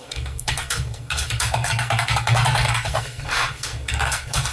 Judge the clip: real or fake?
fake